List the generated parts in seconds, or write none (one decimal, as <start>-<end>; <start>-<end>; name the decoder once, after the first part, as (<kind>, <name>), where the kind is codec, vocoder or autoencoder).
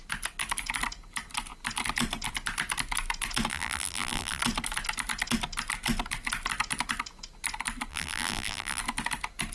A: 3.5-4.4 (vocoder, BigVGAN v2); 7.9-8.8